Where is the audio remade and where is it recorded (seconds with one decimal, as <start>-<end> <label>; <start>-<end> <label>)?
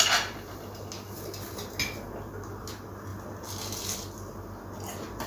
0.0-5.3 recorded